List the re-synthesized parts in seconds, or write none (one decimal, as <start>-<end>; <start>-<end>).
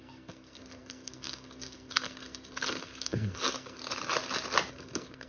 0.0-3.8; 4.7-5.3